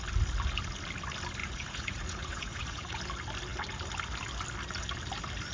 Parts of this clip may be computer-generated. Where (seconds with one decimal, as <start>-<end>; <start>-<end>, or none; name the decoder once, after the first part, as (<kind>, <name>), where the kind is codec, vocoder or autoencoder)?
1.4-3.0 (vocoder, Vocos)